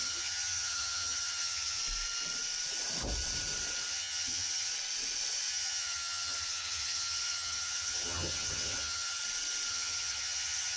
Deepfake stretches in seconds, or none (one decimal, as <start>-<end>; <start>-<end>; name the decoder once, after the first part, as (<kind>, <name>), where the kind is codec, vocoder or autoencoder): 0.0-1.8 (vocoder, HiFi-GAN); 3.9-4.7; 5.5-9.2; 9.7-10.8